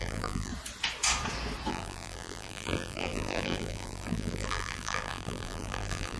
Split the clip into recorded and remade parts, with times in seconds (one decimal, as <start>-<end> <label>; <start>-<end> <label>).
0.0-0.5 remade; 0.5-1.7 recorded; 1.7-6.2 remade